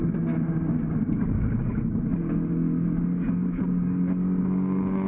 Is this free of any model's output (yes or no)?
no